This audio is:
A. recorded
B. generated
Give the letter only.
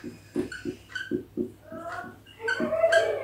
A